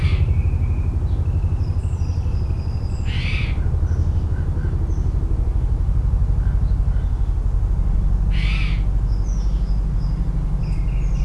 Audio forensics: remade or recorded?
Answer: recorded